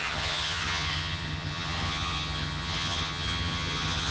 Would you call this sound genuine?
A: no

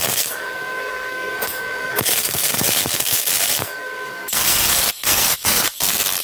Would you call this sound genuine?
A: no